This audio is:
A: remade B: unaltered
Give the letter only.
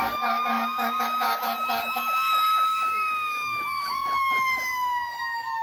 A